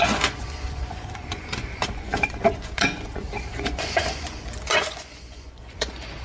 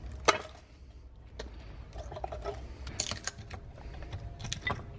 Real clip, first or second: second